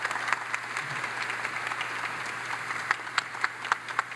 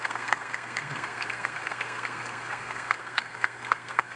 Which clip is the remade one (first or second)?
second